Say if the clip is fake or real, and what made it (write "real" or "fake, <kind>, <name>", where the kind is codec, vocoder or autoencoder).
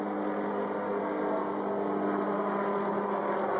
real